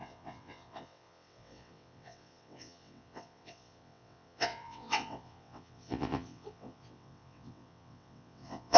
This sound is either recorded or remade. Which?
remade